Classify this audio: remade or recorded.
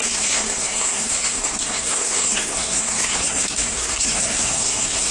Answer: remade